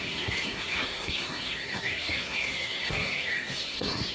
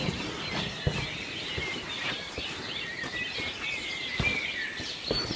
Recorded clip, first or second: second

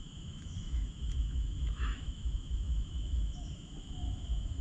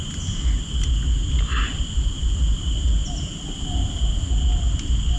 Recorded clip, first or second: second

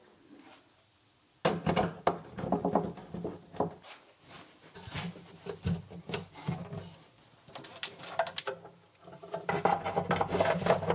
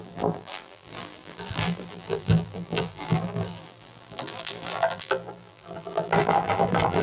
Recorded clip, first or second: first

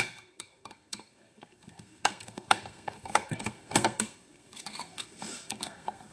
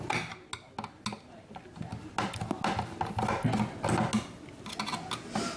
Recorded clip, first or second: second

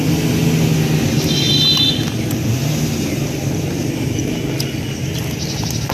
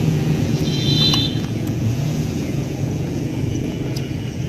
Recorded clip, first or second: first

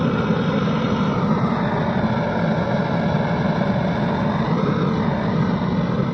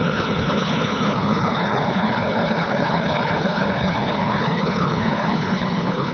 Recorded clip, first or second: first